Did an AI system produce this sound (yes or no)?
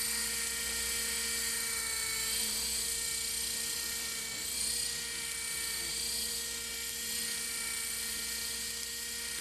no